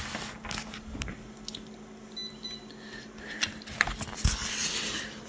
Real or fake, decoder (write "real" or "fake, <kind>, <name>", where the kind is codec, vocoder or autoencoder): real